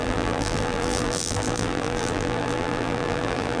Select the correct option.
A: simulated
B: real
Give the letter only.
A